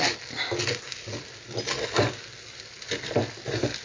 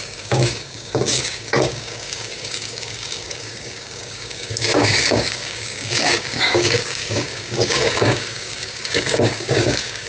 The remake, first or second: second